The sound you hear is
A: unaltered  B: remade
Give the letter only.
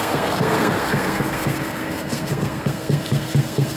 B